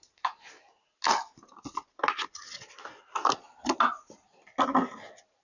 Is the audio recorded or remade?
recorded